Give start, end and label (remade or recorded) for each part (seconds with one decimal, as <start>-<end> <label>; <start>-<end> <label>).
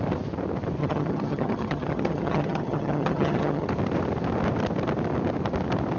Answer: 0.0-0.8 recorded; 0.8-3.7 remade; 3.7-6.0 recorded